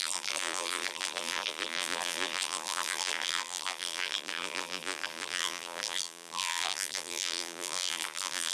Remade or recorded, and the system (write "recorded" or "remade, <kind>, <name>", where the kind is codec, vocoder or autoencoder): remade, vocoder, BigVGAN v2